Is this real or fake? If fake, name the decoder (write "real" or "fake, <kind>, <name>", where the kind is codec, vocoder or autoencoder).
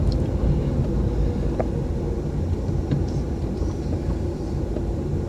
real